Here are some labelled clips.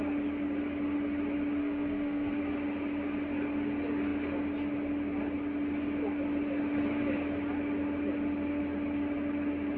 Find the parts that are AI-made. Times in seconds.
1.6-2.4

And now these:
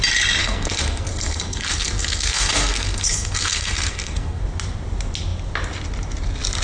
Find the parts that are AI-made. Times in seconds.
0.4-4.4

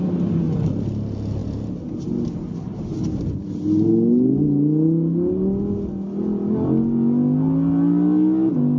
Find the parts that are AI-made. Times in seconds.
none

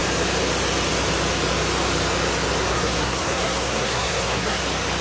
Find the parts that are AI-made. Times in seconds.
2.7-4.6

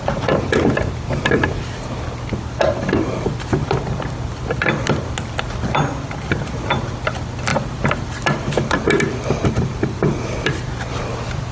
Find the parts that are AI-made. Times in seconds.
none

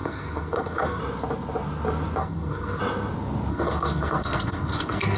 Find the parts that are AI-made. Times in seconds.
0.0-1.0; 2.2-2.8; 3.5-5.2